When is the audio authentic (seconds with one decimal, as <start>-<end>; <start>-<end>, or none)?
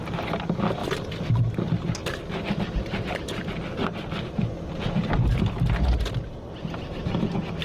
0.0-7.6